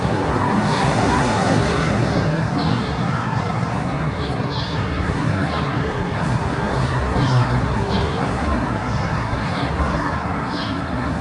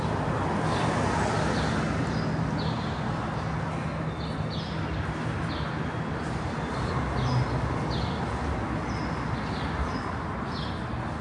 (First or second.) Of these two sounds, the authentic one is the second